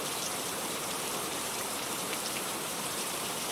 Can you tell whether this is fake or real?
fake